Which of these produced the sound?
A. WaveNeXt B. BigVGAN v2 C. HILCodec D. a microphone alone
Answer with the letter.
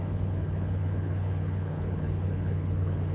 C